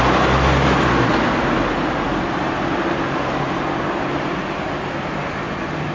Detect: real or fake real